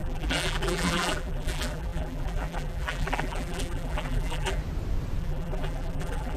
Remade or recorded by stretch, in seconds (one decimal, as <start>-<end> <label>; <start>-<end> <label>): 0.0-4.6 remade; 4.6-5.2 recorded; 5.2-6.4 remade